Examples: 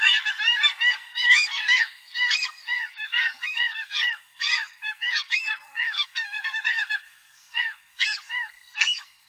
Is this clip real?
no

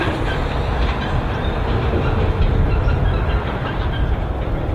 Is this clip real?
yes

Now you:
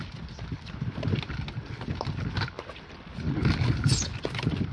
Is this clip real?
yes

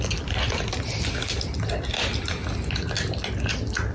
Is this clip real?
yes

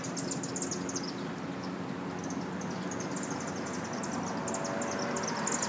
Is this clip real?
yes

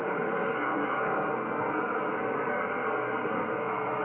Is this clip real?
no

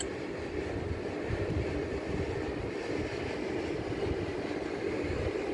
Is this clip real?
yes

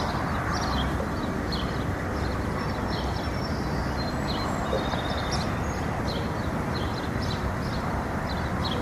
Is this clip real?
yes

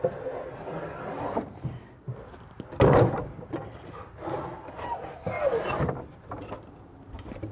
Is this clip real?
yes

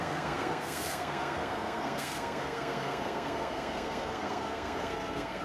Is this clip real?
no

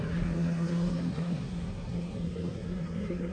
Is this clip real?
no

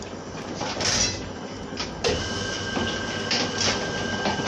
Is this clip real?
yes